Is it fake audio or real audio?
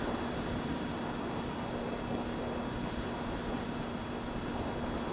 real